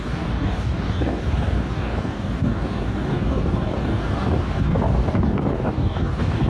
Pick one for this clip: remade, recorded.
remade